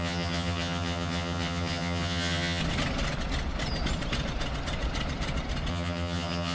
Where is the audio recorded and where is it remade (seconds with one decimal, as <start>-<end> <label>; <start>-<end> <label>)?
0.0-2.6 remade; 2.6-5.7 recorded; 5.7-6.5 remade